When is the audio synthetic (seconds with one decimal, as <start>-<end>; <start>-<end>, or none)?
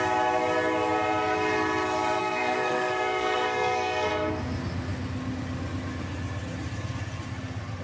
2.2-4.1